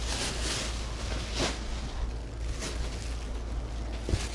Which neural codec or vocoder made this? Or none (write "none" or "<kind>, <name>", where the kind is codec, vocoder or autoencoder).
none